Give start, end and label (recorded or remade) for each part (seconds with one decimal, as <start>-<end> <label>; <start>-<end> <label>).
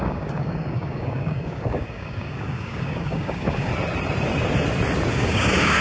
0.0-3.7 remade; 3.7-5.1 recorded; 5.1-5.8 remade